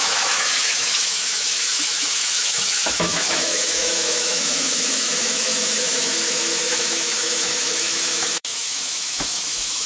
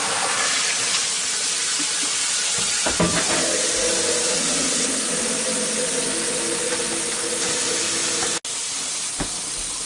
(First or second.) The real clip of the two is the second